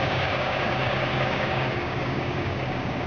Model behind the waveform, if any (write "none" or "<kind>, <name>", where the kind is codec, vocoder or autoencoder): codec, DAC